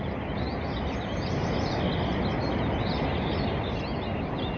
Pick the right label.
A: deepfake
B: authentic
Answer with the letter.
B